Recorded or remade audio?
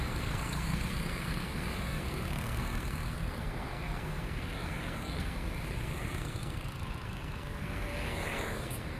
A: remade